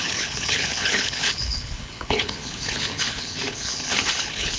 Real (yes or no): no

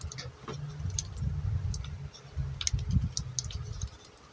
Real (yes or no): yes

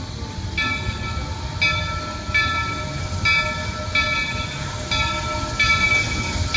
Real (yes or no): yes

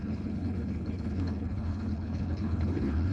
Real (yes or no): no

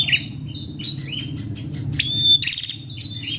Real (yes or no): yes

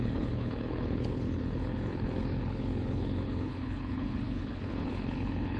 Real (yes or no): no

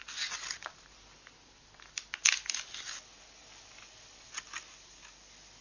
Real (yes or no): yes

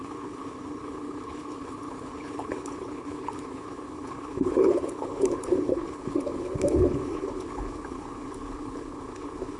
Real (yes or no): no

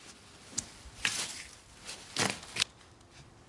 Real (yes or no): yes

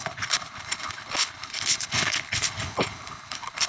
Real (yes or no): no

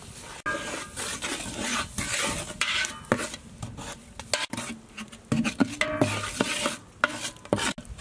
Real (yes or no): yes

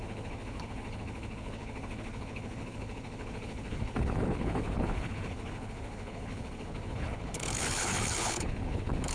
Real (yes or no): no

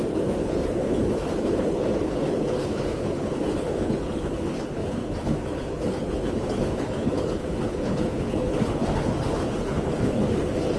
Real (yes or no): no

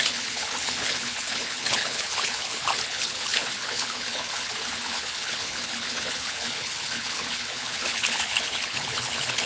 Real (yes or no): no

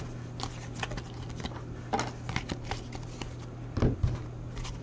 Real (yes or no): yes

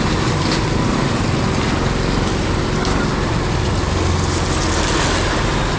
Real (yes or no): yes